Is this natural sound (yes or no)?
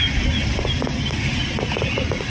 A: yes